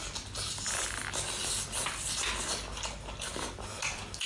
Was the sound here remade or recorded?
recorded